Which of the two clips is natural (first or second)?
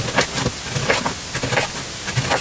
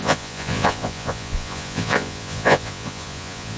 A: first